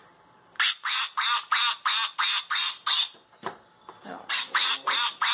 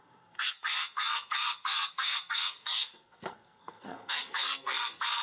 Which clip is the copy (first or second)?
second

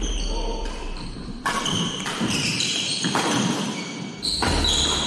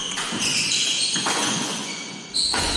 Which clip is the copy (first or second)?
second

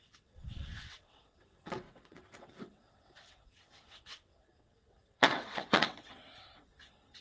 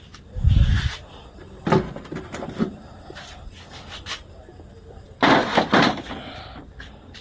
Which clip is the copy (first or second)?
first